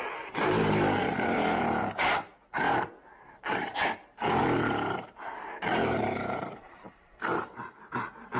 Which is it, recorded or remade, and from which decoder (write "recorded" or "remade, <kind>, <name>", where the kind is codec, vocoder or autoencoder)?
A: remade, vocoder, BigVGAN v2